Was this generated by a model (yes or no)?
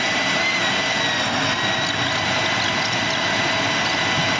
no